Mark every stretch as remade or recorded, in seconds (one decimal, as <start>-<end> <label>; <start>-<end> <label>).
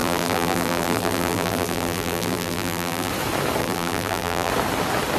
0.0-3.1 remade; 3.1-3.6 recorded; 3.6-4.5 remade; 4.5-5.2 recorded